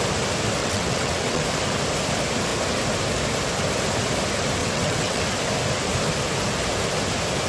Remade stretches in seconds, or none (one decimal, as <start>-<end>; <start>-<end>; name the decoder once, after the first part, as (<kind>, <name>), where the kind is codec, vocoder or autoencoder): 0.6-1.4 (vocoder, WaveNeXt); 4.6-5.2